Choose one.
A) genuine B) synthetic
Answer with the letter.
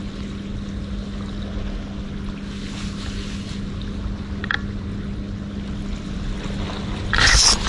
A